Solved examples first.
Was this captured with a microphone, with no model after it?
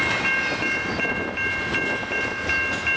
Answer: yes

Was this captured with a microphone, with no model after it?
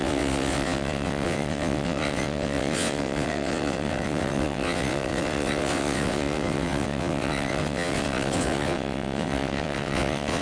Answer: no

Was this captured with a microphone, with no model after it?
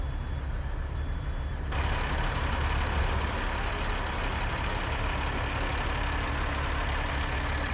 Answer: yes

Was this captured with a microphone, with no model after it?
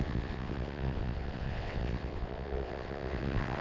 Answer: no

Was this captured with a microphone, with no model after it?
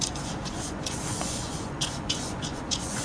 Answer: no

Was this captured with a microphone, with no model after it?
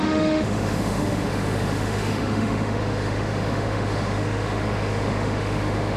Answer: no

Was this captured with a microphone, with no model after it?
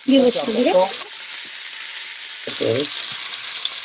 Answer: yes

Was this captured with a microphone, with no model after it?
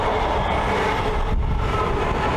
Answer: yes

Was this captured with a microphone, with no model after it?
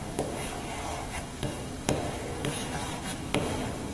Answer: no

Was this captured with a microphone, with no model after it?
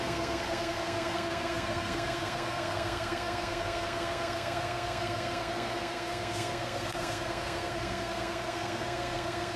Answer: no